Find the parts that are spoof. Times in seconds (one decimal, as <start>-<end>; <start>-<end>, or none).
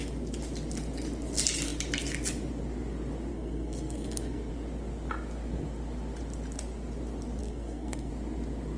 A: 3.3-4.5; 7.4-8.1